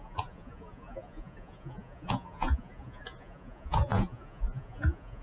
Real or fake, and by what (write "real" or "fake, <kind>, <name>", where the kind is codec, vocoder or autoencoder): fake, vocoder, Vocos